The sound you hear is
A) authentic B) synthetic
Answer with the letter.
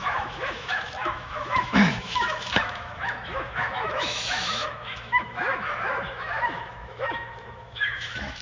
B